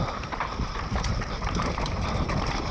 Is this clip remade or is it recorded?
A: remade